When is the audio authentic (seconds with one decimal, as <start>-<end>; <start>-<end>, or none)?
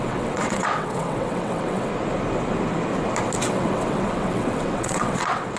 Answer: 1.9-3.4